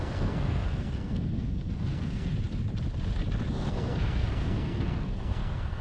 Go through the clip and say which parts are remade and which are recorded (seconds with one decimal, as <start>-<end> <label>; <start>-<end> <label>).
0.0-2.3 remade; 2.3-3.5 recorded; 3.5-5.8 remade